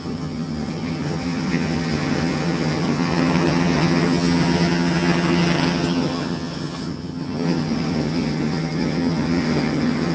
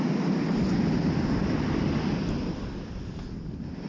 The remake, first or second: first